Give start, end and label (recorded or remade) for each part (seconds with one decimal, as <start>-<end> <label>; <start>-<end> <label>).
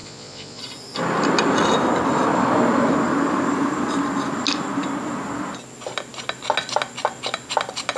0.0-0.6 remade; 0.6-8.0 recorded